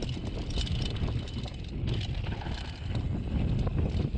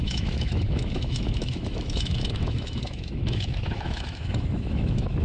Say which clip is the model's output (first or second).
second